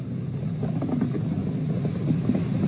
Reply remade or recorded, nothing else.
recorded